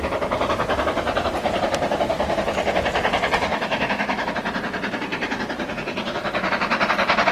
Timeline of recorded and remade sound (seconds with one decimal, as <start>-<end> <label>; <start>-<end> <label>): 0.0-3.5 recorded; 3.5-4.3 remade; 4.3-7.3 recorded